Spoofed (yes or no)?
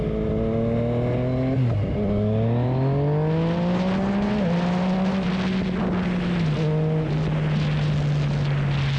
no